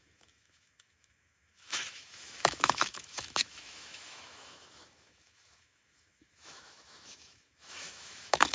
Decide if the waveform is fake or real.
fake